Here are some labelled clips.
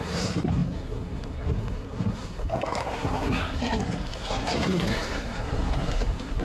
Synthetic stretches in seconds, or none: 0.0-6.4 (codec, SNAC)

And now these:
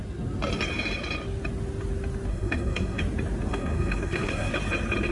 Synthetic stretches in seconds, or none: 2.3-3.0 (codec, SNAC); 3.5-4.5

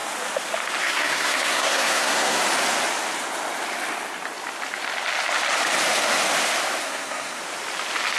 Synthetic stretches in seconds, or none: 0.8-2.4 (codec, SNAC); 6.8-7.4

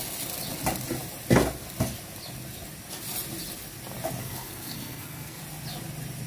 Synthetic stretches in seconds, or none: 4.2-5.4 (codec, SNAC)

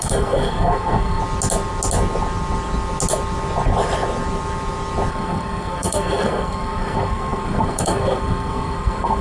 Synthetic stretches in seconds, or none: 0.0-1.2 (codec, SNAC); 5.1-9.2